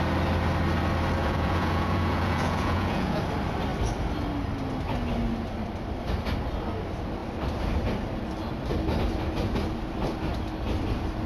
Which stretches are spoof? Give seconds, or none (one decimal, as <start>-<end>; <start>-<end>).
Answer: 1.2-3.2